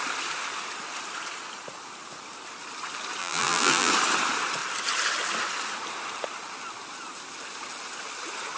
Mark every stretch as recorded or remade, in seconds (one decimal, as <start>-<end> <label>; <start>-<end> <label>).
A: 0.0-3.2 recorded; 3.2-3.9 remade; 3.9-8.6 recorded